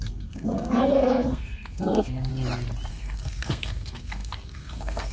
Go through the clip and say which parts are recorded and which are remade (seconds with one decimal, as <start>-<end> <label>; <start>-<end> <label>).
0.0-2.3 remade; 2.3-2.9 recorded; 2.9-5.1 remade

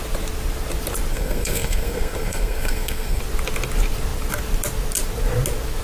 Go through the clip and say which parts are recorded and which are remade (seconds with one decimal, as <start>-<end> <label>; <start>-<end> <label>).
0.0-1.1 recorded; 1.1-3.2 remade; 3.2-5.8 recorded